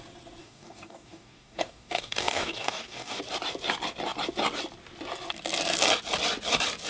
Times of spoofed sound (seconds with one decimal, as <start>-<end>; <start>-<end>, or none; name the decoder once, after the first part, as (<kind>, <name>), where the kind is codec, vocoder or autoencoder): 0.4-3.2 (codec, DAC)